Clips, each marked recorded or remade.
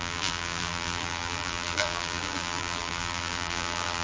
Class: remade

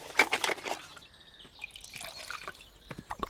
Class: recorded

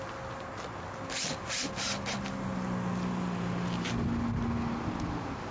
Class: recorded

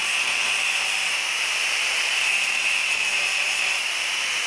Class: remade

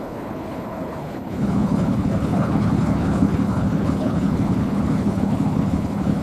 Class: remade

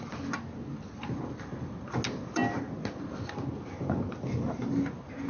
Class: recorded